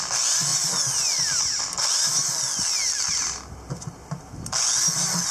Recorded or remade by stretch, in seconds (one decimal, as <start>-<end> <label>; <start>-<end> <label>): 0.0-5.3 recorded